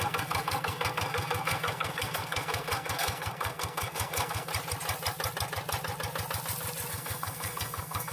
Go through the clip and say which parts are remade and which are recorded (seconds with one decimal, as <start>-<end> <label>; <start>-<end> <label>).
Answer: 0.0-4.5 remade; 4.5-6.9 recorded; 6.9-8.1 remade